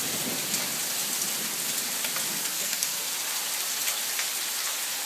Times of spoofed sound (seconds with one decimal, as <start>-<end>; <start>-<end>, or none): 2.4-3.1